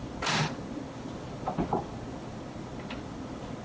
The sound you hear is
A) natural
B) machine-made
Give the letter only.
A